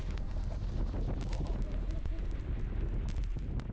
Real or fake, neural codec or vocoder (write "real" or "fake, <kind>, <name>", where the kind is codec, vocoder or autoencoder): real